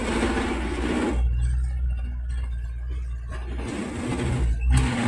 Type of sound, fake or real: real